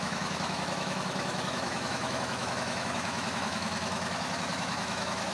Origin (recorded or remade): remade